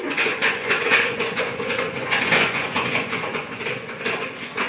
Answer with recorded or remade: remade